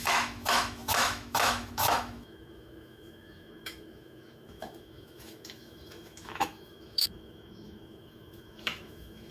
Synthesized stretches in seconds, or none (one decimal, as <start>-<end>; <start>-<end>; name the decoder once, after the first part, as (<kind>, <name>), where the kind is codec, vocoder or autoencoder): 0.0-9.3 (autoencoder, DAC-VAE)

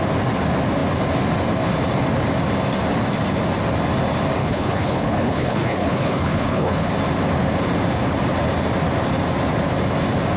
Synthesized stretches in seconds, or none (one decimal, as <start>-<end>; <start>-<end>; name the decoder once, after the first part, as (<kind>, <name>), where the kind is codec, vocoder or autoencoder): 4.4-6.9 (codec, HILCodec)

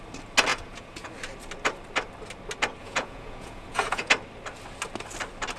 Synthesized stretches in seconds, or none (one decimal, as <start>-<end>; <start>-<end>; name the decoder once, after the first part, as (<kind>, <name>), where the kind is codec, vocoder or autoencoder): 0.5-1.1 (vocoder, Vocos); 2.8-4.1